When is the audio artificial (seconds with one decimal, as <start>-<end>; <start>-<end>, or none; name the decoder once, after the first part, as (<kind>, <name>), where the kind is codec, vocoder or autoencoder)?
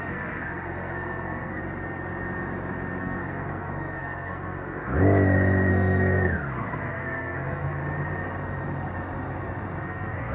0.0-1.6 (codec, SNAC); 3.0-4.9; 5.7-7.8; 9.8-10.3